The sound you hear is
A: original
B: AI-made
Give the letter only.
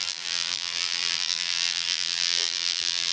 B